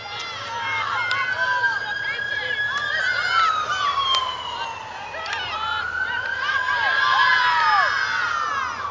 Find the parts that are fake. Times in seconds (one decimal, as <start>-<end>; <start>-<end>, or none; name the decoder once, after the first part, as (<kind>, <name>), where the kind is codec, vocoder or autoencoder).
none